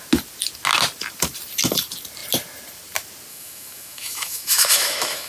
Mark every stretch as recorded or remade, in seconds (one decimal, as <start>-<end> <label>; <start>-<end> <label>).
0.0-3.3 recorded; 3.3-5.3 remade